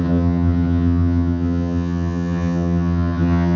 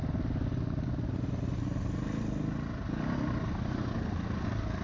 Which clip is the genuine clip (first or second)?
second